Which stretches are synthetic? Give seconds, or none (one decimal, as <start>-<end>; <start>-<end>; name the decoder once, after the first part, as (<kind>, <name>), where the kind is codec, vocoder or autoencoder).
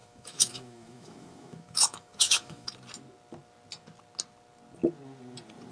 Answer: 0.0-2.7 (autoencoder, DAC-VAE)